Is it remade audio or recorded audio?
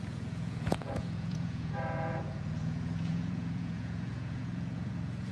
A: remade